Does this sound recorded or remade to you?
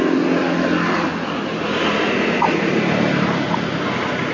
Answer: recorded